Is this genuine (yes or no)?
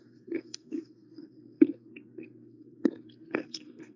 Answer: no